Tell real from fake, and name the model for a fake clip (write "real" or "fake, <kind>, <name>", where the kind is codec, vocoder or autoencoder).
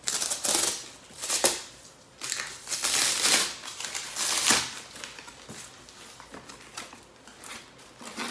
real